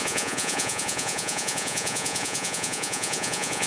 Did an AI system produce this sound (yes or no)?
yes